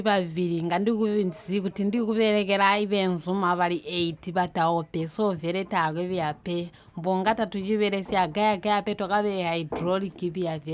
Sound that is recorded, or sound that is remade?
recorded